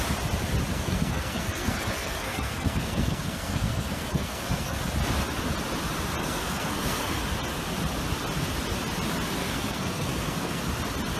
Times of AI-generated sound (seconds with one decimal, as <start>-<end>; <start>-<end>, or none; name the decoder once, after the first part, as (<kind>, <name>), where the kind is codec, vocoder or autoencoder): 0.7-4.8 (codec, SNAC); 6.2-7.2; 9.4-10.6